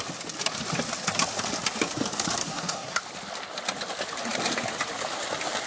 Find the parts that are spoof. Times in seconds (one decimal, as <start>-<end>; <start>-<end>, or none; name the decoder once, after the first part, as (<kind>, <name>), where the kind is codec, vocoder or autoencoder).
2.4-3.0 (codec, SNAC)